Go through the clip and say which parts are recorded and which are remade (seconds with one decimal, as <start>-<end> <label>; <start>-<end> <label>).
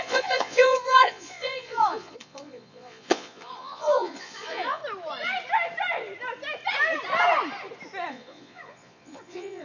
0.0-4.8 remade; 4.8-8.1 recorded; 8.1-9.6 remade